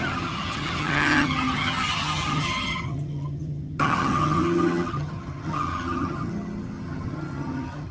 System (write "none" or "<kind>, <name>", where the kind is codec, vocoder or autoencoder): vocoder, HiFi-GAN